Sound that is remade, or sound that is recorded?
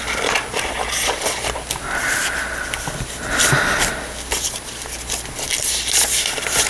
recorded